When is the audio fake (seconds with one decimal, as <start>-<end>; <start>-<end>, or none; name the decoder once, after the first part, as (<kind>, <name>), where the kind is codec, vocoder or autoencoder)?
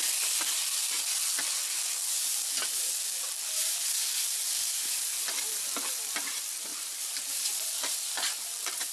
none